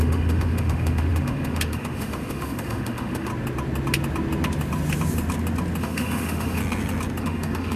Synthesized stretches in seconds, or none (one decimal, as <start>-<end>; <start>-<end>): 0.0-3.3; 5.8-6.6; 7.2-7.8